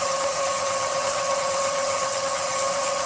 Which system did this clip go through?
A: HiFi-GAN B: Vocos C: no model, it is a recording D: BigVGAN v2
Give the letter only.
A